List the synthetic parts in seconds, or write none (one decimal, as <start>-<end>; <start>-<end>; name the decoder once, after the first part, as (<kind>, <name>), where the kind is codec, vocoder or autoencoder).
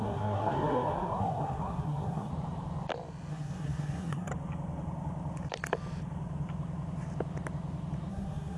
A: 0.0-2.3 (codec, SNAC); 3.3-4.3; 8.1-8.6